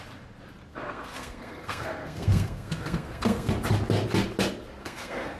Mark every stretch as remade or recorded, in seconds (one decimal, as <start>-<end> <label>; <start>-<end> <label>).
0.0-0.7 recorded; 0.7-3.5 remade; 3.5-4.8 recorded; 4.8-5.4 remade